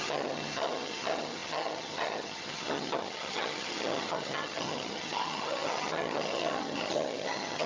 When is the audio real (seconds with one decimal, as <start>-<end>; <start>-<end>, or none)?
none